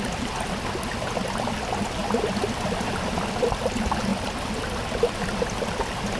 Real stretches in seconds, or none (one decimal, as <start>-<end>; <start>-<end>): 0.0-6.2